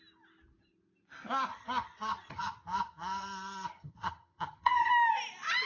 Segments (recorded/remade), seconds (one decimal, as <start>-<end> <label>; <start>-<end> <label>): 0.0-1.5 recorded; 1.5-4.9 remade; 4.9-5.7 recorded